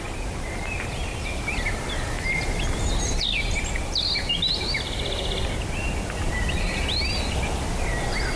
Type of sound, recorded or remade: recorded